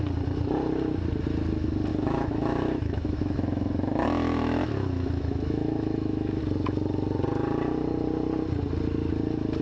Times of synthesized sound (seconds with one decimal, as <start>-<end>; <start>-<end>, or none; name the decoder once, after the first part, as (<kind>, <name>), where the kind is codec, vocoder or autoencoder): 1.9-6.4 (autoencoder, DAC-VAE)

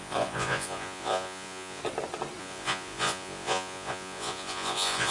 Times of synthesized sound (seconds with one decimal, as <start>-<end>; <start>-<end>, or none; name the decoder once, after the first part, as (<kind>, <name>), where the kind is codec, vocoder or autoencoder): 0.0-1.8 (vocoder, Vocos); 2.4-5.1

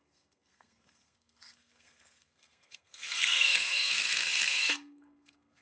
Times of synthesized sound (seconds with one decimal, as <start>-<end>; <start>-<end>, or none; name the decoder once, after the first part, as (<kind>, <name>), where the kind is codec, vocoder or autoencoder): 0.0-5.6 (codec, SNAC)

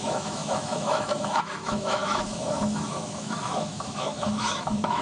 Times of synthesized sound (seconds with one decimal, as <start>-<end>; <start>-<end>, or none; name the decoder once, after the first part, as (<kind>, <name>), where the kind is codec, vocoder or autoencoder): 0.0-5.0 (autoencoder, DAC-VAE)

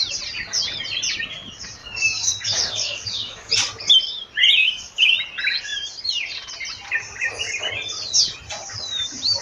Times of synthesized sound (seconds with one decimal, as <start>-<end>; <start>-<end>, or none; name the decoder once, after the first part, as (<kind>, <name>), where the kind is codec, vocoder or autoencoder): 1.8-3.5 (codec, DAC); 4.6-5.1

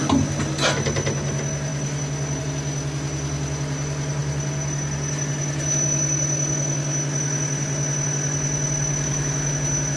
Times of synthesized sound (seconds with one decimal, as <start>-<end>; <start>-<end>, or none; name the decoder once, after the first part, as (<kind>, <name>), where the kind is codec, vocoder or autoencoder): 8.9-9.5 (autoencoder, DAC-VAE)